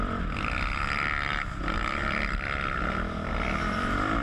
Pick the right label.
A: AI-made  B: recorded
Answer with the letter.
A